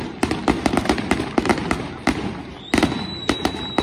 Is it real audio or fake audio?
fake